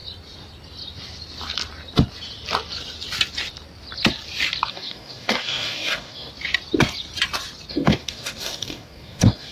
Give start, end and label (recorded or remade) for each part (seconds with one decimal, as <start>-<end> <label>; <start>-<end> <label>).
0.0-4.7 recorded; 4.7-6.3 remade; 6.3-7.7 recorded; 7.7-9.5 remade

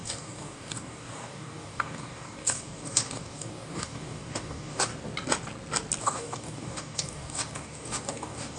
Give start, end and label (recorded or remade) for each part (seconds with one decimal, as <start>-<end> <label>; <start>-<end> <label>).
0.0-4.9 remade; 4.9-6.0 recorded; 6.0-8.6 remade

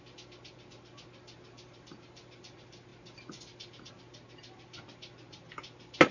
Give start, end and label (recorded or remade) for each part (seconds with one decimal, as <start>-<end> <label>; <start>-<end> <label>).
0.0-6.1 recorded

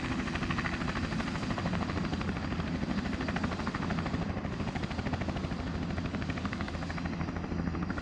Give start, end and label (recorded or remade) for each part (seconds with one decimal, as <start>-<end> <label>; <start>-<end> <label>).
0.0-6.1 recorded; 6.1-6.7 remade; 6.7-8.0 recorded